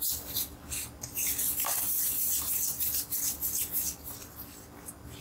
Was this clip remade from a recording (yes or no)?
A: no